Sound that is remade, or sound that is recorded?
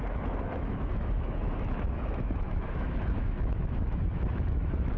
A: remade